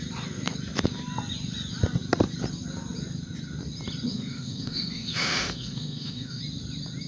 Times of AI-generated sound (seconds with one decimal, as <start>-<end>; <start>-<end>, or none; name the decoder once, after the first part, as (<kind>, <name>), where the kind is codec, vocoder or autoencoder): 4.1-6.4 (autoencoder, DAC-VAE)